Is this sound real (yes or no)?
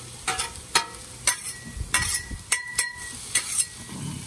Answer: yes